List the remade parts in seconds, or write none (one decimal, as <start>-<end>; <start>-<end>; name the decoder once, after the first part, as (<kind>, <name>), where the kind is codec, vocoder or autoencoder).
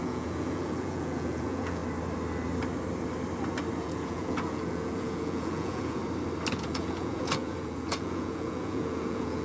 0.0-1.8 (vocoder, Vocos); 3.8-6.0; 6.5-9.4